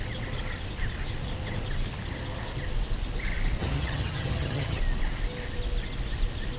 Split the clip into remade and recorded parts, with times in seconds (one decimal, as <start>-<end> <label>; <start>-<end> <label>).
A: 0.0-3.6 recorded; 3.6-4.8 remade; 4.8-6.6 recorded